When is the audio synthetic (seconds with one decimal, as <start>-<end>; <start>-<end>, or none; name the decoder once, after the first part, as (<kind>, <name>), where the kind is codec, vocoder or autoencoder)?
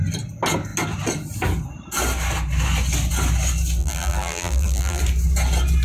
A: 3.8-5.0 (vocoder, BigVGAN v2)